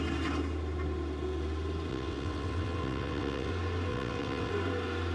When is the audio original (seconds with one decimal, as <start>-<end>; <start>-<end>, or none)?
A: 0.0-1.9; 3.5-3.9; 4.5-5.1